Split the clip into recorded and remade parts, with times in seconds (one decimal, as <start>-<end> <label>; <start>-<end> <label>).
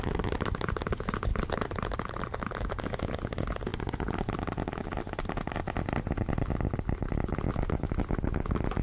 0.0-1.3 recorded; 1.3-2.2 remade; 2.2-7.5 recorded; 7.5-8.0 remade; 8.0-8.8 recorded